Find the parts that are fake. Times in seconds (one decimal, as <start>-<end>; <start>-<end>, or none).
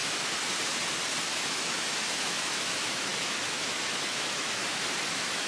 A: 1.3-4.6; 5.1-5.5